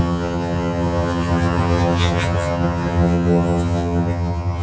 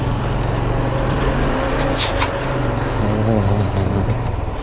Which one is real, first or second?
second